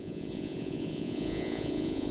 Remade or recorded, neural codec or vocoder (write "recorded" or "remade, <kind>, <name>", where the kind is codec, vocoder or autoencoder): remade, vocoder, Vocos